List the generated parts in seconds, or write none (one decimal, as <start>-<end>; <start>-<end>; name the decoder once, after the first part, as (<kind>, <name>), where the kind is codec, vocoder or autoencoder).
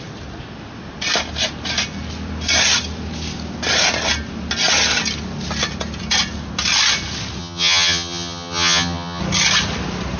7.4-9.2 (vocoder, HiFi-GAN)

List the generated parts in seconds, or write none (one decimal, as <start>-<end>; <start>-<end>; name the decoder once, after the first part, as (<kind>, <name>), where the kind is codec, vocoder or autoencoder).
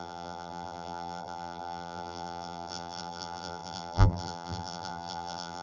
0.0-5.6 (vocoder, BigVGAN v2)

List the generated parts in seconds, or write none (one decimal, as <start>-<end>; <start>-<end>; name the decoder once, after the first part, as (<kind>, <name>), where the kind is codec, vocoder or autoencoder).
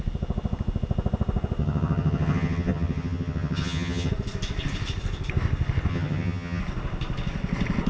1.6-4.1 (vocoder, HiFi-GAN); 5.9-6.6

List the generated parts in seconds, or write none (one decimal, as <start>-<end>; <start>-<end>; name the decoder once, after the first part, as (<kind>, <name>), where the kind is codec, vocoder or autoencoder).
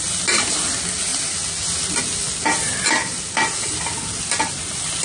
none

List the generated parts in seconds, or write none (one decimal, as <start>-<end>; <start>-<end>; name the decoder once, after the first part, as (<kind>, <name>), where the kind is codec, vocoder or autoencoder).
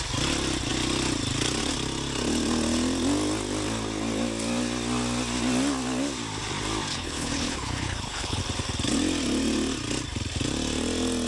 6.9-8.4 (codec, HILCodec)